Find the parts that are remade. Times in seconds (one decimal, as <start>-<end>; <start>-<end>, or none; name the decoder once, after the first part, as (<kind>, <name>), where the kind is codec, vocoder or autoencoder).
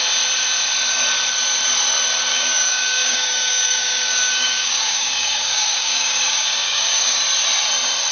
2.3-7.2 (codec, DAC)